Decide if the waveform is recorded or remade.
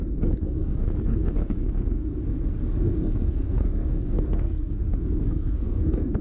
remade